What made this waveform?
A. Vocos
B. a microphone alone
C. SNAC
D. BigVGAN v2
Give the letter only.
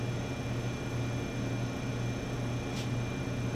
B